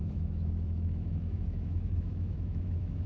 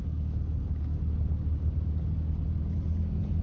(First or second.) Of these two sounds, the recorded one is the second